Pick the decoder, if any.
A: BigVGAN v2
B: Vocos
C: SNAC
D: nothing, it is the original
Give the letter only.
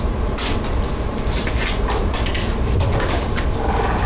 D